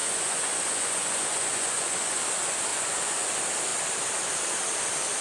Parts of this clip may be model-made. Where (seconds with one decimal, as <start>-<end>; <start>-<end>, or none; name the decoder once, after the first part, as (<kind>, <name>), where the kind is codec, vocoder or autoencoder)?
0.0-2.2 (vocoder, Vocos); 2.7-3.3